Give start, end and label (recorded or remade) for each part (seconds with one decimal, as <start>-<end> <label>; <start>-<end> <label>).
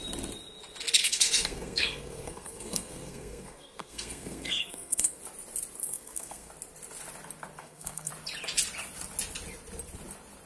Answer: 0.0-1.0 recorded; 1.0-5.2 remade; 5.2-5.8 recorded; 5.8-6.5 remade; 6.5-7.6 recorded; 7.6-8.1 remade; 8.1-10.5 recorded